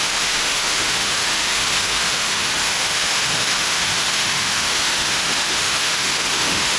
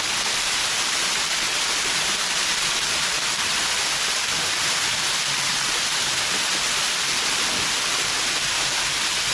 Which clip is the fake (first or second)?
first